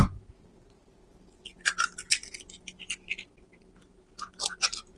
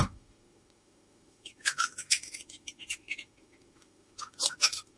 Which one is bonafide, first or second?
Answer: first